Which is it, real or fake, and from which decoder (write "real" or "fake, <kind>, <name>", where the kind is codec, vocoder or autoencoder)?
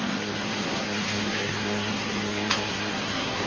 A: fake, codec, SNAC